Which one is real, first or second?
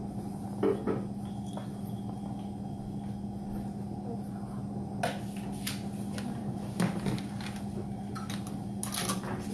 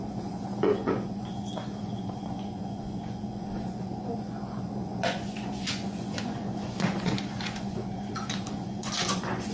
first